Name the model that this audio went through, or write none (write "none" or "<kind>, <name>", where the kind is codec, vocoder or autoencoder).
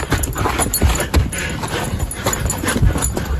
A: none